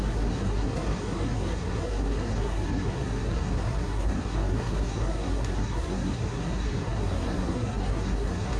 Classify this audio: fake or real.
fake